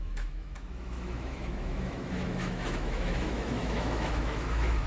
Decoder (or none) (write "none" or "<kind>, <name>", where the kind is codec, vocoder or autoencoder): autoencoder, DAC-VAE